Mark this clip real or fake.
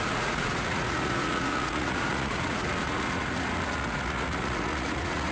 fake